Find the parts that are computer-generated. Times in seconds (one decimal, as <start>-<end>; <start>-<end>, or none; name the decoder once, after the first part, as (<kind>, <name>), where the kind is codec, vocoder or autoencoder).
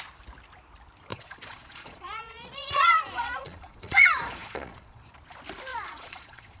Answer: 1.1-5.1 (vocoder, Vocos); 5.7-6.6